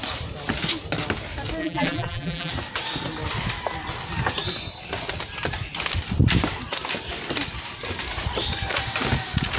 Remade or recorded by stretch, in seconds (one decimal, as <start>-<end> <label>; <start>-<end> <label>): 0.0-1.6 recorded; 1.6-2.5 remade; 2.5-9.6 recorded